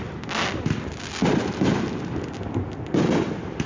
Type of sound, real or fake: real